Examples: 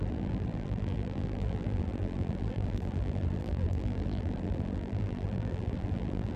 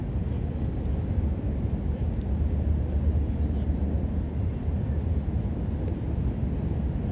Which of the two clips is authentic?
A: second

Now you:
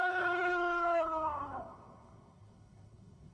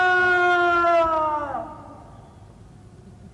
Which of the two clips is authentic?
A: second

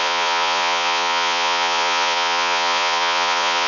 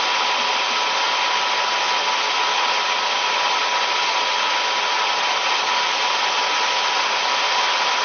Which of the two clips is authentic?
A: second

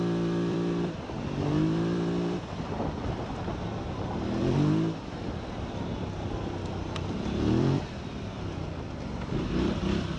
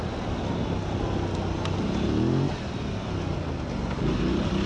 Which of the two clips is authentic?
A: second